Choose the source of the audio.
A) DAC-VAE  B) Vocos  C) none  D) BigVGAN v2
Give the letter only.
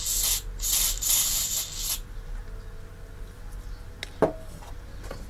C